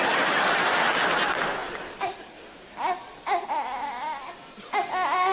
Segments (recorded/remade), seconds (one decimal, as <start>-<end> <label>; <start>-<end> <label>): 0.0-5.3 recorded